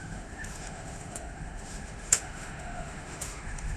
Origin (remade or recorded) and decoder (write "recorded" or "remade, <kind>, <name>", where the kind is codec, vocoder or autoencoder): remade, autoencoder, DAC-VAE